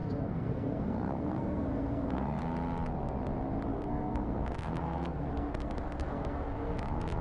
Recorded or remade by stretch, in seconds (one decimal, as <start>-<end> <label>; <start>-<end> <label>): 0.0-2.4 remade; 2.4-3.7 recorded; 3.7-7.2 remade